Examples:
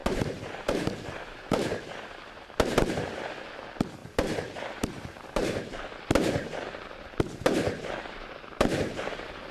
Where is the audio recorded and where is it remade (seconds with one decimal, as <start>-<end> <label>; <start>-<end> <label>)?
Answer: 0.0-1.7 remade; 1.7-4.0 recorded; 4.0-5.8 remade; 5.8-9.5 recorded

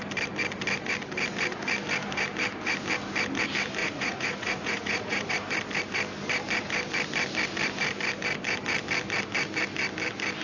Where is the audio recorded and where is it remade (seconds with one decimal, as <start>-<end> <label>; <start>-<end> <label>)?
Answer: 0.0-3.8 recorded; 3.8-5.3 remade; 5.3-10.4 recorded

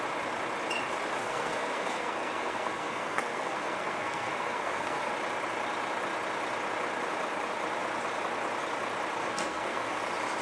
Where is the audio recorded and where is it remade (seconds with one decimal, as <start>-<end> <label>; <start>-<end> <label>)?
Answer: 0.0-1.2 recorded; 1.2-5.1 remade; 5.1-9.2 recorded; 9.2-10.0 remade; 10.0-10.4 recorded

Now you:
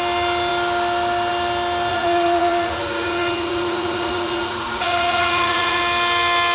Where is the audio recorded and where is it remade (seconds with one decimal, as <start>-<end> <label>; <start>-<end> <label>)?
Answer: 0.0-1.9 recorded; 1.9-5.8 remade; 5.8-6.5 recorded

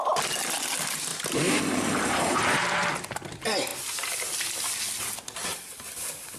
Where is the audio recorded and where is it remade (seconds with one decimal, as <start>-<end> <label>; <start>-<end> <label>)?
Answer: 0.0-1.1 recorded; 1.1-2.9 remade; 2.9-6.4 recorded

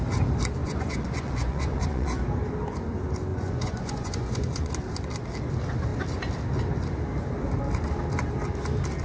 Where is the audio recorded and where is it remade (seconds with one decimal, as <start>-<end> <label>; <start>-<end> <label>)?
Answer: 0.0-0.6 recorded; 0.6-2.2 remade; 2.2-3.3 recorded; 3.3-4.7 remade; 4.7-9.0 recorded